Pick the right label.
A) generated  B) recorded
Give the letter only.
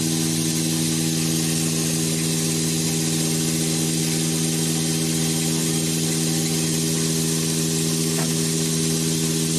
B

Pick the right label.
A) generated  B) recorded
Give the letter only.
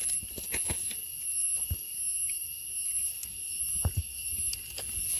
B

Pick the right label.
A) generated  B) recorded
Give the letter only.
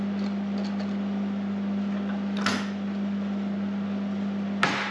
B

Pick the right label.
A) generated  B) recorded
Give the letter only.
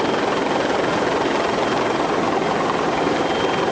B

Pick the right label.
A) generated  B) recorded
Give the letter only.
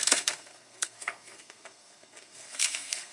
A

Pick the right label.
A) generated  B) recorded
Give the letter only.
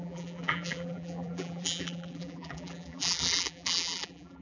A